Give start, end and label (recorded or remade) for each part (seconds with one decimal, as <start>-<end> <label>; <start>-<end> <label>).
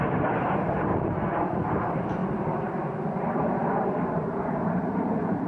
0.0-0.9 remade; 0.9-1.5 recorded; 1.5-2.2 remade; 2.2-3.1 recorded; 3.1-5.5 remade